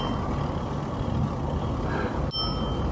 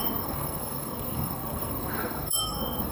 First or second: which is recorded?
first